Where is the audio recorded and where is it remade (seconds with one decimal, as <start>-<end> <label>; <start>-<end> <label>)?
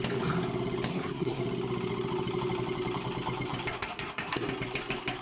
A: 0.0-0.9 recorded; 0.9-1.4 remade; 1.4-3.7 recorded; 3.7-4.3 remade; 4.3-5.2 recorded